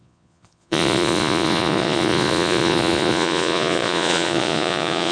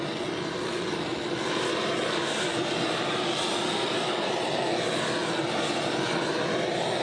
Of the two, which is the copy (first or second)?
first